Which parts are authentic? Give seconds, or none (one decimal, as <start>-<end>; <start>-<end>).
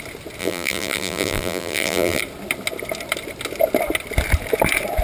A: 0.0-0.4; 2.2-5.0